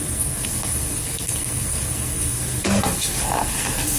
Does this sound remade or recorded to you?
remade